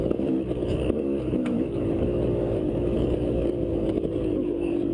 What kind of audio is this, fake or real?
fake